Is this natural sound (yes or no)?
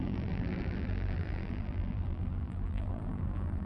no